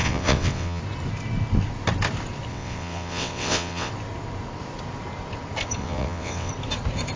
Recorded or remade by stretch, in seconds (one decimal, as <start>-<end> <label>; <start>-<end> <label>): 0.0-0.8 remade; 0.8-2.5 recorded; 2.5-3.9 remade; 3.9-5.8 recorded; 5.8-6.5 remade; 6.5-7.2 recorded